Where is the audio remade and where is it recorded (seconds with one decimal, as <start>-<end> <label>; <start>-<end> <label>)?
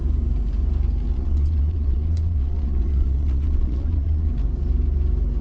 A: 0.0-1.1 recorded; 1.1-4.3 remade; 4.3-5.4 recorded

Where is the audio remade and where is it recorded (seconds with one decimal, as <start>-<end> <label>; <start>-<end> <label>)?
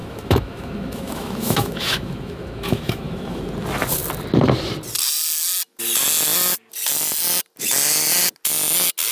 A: 0.0-3.4 remade; 3.4-9.1 recorded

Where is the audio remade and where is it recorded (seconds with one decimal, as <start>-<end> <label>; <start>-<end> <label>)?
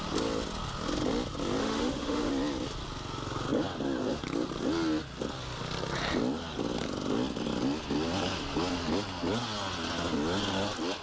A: 0.0-1.6 recorded; 1.6-2.3 remade; 2.3-11.0 recorded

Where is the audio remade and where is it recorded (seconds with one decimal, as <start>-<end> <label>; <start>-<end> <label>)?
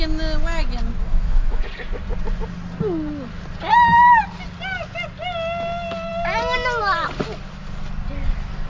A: 0.0-1.0 recorded; 1.0-1.6 remade; 1.6-8.7 recorded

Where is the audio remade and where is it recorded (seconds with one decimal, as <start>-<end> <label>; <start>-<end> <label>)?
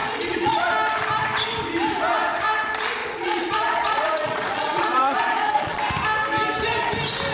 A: 0.0-0.7 remade; 0.7-3.0 recorded; 3.0-5.8 remade; 5.8-7.3 recorded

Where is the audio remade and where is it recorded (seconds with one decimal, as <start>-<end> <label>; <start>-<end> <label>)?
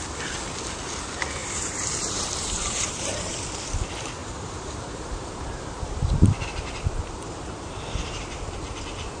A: 0.0-1.4 recorded; 1.4-3.3 remade; 3.3-4.2 recorded; 4.2-8.5 remade; 8.5-9.2 recorded